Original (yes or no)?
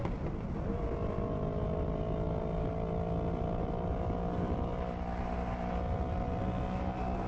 yes